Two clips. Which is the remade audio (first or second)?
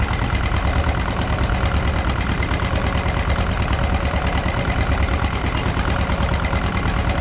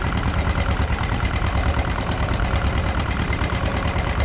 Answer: second